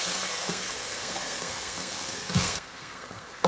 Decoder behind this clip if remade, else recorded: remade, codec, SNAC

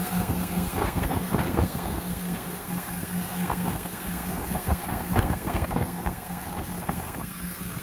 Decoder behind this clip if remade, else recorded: remade, codec, SNAC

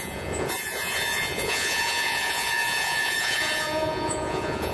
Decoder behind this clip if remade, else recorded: remade, vocoder, Vocos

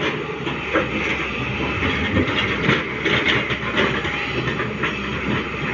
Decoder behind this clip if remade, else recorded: recorded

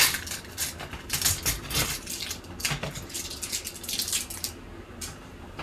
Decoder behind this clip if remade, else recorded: recorded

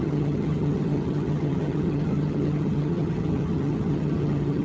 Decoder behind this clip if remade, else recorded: remade, vocoder, HiFi-GAN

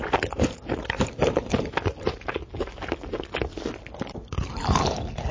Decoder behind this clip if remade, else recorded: recorded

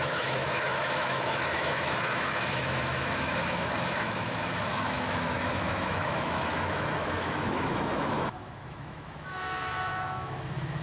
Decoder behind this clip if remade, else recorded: remade, autoencoder, DAC-VAE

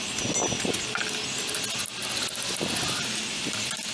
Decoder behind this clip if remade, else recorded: recorded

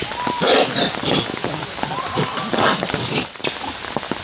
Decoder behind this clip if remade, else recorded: recorded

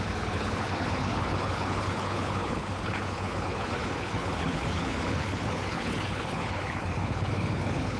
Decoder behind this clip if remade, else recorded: remade, codec, HILCodec